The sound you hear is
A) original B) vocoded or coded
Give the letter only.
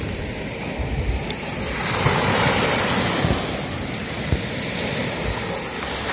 A